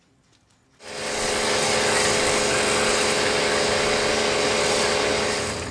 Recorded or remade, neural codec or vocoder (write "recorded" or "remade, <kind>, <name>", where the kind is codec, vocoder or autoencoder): recorded